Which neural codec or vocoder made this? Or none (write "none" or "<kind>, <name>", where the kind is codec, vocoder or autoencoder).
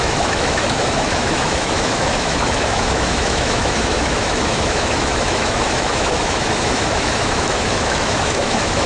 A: autoencoder, DAC-VAE